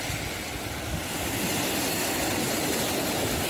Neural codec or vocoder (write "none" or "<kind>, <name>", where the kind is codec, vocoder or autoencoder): none